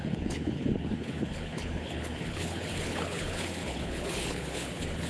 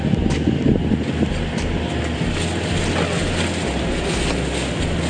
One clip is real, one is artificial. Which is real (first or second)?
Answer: second